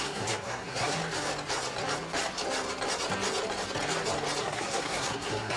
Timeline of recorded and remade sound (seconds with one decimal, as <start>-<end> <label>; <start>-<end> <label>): 0.0-1.0 remade; 1.0-4.4 recorded; 4.4-5.6 remade